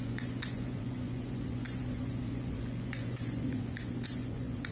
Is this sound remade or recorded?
remade